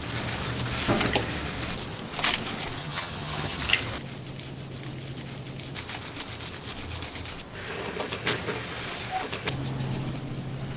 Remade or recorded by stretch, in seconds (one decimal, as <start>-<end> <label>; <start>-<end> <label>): 0.0-2.8 recorded; 2.8-3.6 remade; 3.6-10.8 recorded